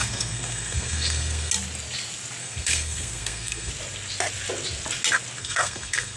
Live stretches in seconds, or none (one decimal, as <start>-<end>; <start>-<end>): 1.5-2.4; 3.7-5.4